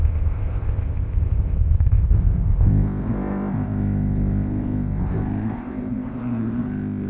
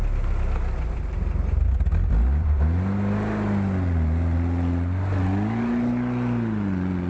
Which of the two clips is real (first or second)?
second